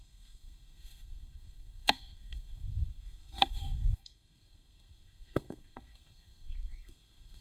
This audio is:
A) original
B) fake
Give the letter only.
B